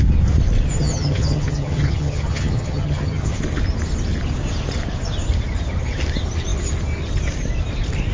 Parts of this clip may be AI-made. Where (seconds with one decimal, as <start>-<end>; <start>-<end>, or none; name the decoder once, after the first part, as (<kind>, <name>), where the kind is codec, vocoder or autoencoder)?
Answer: 0.8-3.4 (vocoder, HiFi-GAN)